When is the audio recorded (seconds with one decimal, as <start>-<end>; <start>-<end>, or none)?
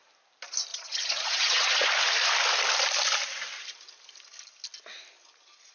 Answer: 0.0-0.7; 1.9-5.7